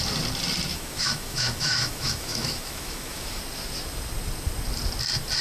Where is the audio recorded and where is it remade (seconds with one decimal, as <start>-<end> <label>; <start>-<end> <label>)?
0.0-0.7 recorded; 0.7-3.4 remade; 3.4-5.4 recorded